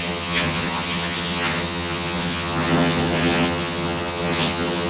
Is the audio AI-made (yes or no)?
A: yes